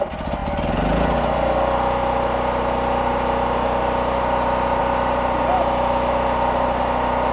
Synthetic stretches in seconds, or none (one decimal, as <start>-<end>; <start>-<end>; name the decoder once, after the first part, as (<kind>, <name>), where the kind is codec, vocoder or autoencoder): none